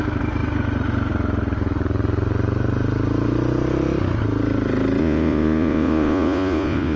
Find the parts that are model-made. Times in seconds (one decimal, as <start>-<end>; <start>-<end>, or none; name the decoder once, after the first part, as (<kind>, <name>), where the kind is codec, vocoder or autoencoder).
5.0-7.0 (vocoder, Vocos)